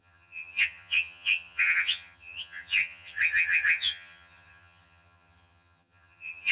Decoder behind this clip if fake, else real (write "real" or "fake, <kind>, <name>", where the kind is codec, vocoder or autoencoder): fake, vocoder, HiFi-GAN